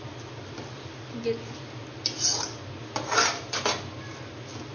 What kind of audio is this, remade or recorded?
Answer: recorded